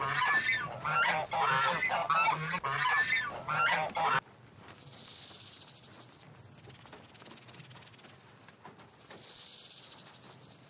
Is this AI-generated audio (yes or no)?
no